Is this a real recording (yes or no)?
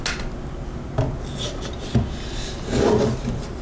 yes